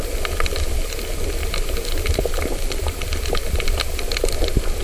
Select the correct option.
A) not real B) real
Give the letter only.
B